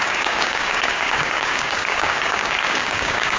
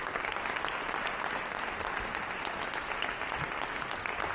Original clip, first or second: second